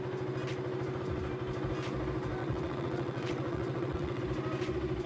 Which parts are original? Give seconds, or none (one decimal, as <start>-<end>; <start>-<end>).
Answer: 0.0-2.4; 4.2-5.1